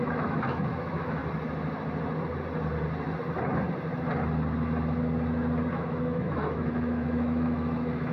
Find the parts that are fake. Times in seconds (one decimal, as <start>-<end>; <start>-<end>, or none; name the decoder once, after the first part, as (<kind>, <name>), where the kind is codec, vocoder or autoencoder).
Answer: 0.0-1.2 (autoencoder, DAC-VAE); 5.7-8.1